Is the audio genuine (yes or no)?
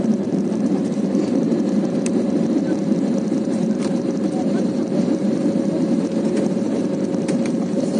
no